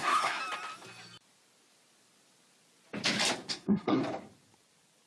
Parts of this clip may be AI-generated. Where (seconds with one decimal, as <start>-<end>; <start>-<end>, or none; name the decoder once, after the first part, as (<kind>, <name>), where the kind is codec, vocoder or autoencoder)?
0.0-0.4 (codec, SNAC); 3.5-4.0